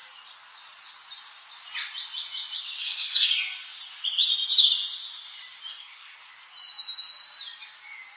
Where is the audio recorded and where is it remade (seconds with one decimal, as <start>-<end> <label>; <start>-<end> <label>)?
0.0-2.8 recorded; 2.8-3.3 remade; 3.3-5.7 recorded; 5.7-6.3 remade; 6.3-8.2 recorded